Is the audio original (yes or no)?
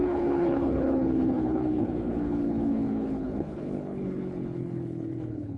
no